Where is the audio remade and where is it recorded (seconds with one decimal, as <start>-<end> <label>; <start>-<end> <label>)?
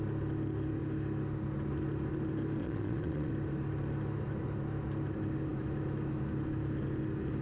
0.0-2.6 recorded; 2.6-3.3 remade; 3.3-7.4 recorded